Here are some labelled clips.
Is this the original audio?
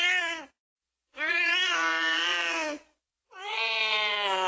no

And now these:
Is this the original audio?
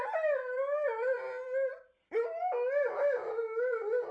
yes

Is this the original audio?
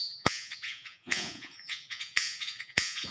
no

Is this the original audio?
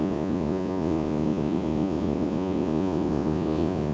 no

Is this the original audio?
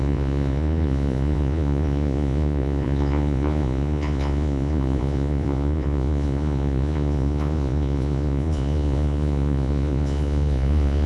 no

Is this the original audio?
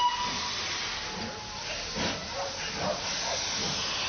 yes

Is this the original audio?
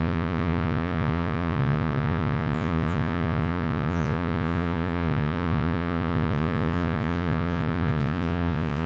no